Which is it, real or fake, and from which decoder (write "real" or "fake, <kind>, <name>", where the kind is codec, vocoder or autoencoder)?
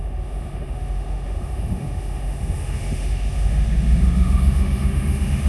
fake, autoencoder, DAC-VAE